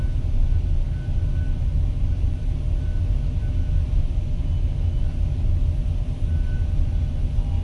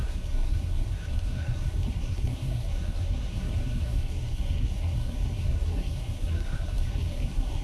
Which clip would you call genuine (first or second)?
first